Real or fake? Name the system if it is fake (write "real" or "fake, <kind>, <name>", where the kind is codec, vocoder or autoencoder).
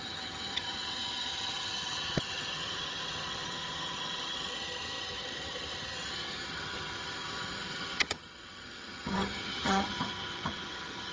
fake, vocoder, HiFi-GAN